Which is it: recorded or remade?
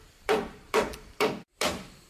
remade